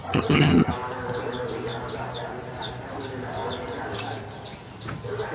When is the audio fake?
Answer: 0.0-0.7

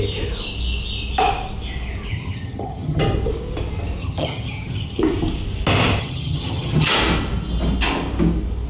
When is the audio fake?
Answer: 2.1-3.0; 4.0-5.0; 6.0-6.9

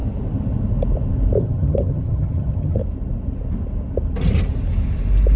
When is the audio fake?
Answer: 1.4-2.8

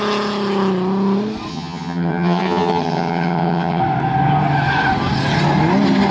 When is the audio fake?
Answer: 1.5-3.8

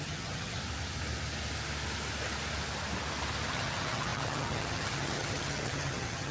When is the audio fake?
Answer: 0.0-0.6; 3.5-6.3

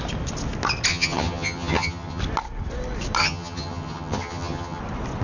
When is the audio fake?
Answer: 0.9-2.2; 3.2-4.8

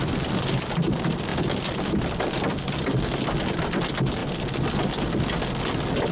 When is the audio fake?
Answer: none

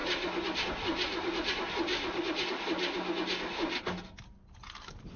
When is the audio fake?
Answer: none